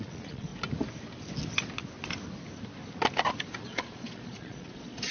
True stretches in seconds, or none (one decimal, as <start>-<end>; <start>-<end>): 0.5-3.6